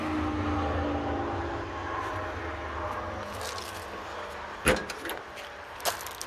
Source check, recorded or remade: recorded